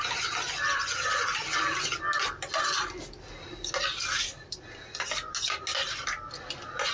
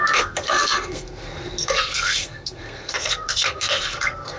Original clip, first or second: first